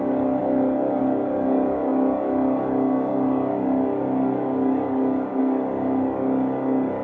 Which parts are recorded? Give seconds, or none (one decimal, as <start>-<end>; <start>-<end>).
none